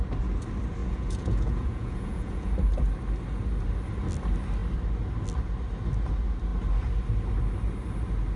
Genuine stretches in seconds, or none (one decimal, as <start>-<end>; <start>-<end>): 0.0-0.8; 2.5-8.4